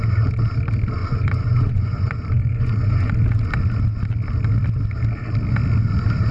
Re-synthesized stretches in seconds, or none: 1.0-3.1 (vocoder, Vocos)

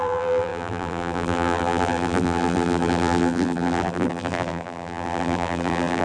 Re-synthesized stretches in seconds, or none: 0.0-6.0 (vocoder, BigVGAN v2)

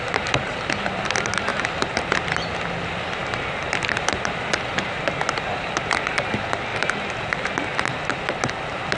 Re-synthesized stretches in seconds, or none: 6.7-7.3 (vocoder, BigVGAN v2)

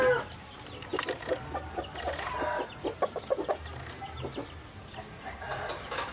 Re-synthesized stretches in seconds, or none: none

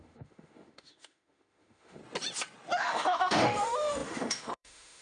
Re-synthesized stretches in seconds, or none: 0.0-2.0 (autoencoder, DAC-VAE); 2.8-5.0